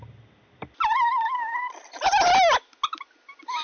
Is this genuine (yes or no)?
yes